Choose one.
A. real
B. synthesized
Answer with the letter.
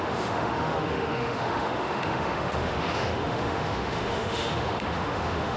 B